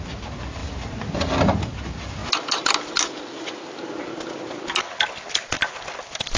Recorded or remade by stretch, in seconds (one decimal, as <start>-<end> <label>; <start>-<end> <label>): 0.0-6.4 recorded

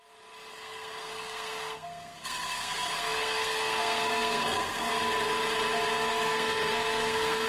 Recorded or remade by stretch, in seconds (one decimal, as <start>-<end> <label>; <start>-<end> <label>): 0.0-0.5 recorded; 0.5-5.0 remade; 5.0-6.1 recorded; 6.1-7.5 remade

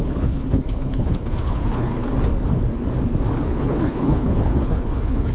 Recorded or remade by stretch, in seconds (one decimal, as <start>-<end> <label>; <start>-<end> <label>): 0.0-1.9 remade; 1.9-3.4 recorded; 3.4-5.3 remade

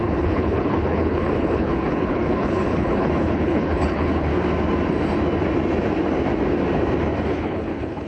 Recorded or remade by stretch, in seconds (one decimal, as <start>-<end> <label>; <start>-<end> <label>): 0.0-4.3 remade; 4.3-7.2 recorded; 7.2-8.1 remade

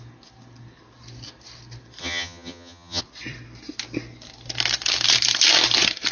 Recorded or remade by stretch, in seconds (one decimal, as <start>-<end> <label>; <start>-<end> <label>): 0.0-2.0 recorded; 2.0-3.0 remade; 3.0-6.1 recorded

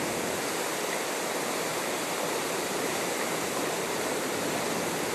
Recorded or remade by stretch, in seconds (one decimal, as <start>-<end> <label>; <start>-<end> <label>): 0.0-1.7 recorded; 1.7-4.3 remade; 4.3-5.1 recorded

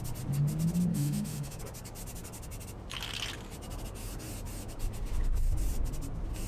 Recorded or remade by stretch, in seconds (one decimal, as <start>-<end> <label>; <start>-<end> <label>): 0.0-0.9 recorded; 0.9-1.6 remade; 1.6-6.5 recorded

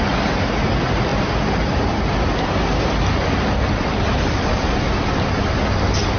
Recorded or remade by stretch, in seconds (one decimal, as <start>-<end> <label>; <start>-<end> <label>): 0.0-1.1 recorded; 1.1-4.8 remade; 4.8-6.2 recorded